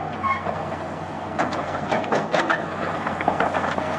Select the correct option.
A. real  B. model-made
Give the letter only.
B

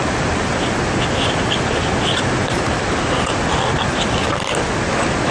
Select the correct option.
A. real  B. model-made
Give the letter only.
A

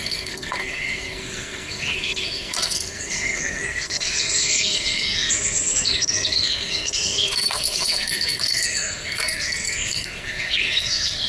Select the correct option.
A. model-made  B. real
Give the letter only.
A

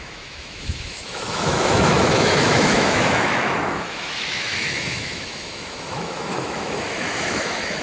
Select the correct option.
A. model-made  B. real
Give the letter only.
A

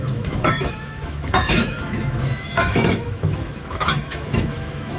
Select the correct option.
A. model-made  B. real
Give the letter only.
A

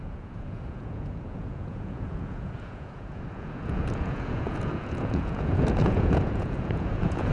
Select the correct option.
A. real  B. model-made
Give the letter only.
B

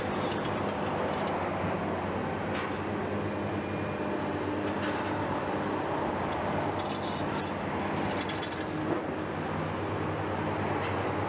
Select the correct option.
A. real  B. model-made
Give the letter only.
A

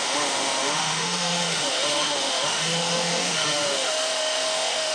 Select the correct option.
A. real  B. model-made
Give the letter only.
B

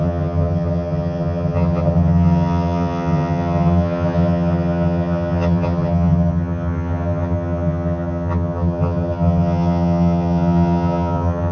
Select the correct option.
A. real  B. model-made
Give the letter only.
B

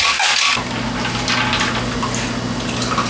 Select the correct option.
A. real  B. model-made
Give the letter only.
A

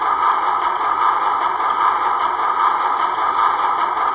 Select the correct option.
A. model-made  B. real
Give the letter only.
B